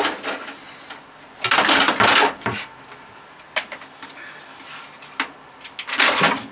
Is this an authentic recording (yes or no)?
yes